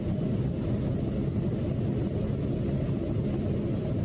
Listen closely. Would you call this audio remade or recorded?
recorded